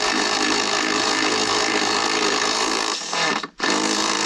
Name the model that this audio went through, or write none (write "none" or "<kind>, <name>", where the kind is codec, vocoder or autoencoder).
vocoder, BigVGAN v2